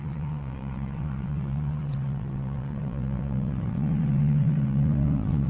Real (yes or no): no